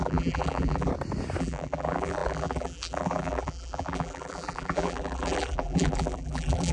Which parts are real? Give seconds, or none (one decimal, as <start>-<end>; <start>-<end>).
0.9-1.4